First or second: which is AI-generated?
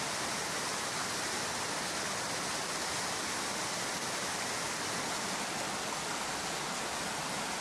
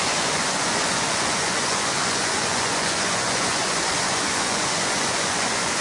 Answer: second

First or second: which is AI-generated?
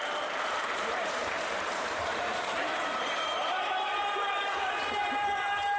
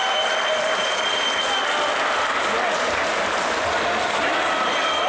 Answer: first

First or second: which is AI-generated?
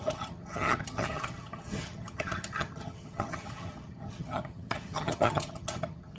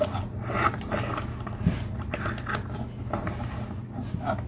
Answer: first